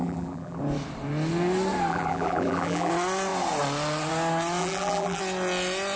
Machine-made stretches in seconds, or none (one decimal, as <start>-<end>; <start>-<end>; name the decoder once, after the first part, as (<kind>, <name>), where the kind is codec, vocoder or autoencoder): 0.0-0.6 (vocoder, BigVGAN v2); 1.9-2.9; 4.6-5.2

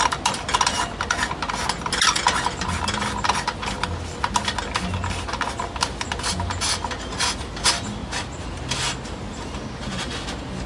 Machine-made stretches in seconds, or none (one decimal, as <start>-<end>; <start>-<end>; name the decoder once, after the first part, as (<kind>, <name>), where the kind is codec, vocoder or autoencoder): none